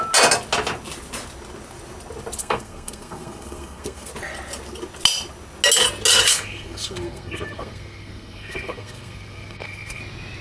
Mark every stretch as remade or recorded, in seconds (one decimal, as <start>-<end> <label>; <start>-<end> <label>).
0.0-2.4 recorded; 2.4-4.1 remade; 4.1-6.3 recorded; 6.3-10.0 remade; 10.0-10.4 recorded